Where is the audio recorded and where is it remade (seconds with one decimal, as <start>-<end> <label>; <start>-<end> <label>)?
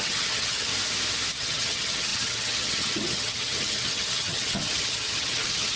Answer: 0.0-0.7 remade; 0.7-1.3 recorded; 1.3-5.8 remade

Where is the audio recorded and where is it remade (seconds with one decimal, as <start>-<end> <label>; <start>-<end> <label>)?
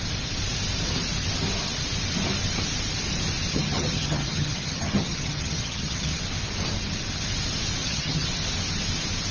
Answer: 0.0-3.5 recorded; 3.5-6.2 remade; 6.2-7.8 recorded; 7.8-8.3 remade; 8.3-9.3 recorded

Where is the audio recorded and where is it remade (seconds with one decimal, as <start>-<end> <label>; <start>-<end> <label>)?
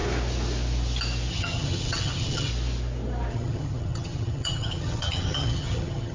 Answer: 0.0-1.3 recorded; 1.3-2.5 remade; 2.5-3.3 recorded; 3.3-6.1 remade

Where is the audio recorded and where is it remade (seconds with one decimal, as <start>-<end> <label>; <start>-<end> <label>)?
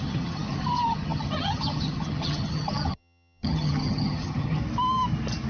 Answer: 0.0-4.6 remade; 4.6-5.5 recorded